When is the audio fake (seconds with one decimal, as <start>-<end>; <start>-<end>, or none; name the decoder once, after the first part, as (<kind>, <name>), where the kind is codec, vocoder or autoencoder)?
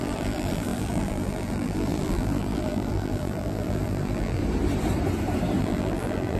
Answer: 0.0-4.4 (vocoder, BigVGAN v2); 5.6-6.4